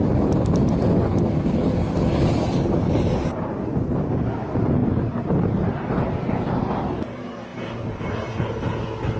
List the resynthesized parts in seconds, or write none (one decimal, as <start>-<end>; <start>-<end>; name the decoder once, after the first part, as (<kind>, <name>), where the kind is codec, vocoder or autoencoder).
4.8-6.1 (vocoder, BigVGAN v2); 7.5-8.0